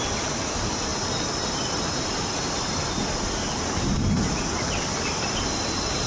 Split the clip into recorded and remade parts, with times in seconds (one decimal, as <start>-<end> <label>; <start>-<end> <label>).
0.0-6.1 recorded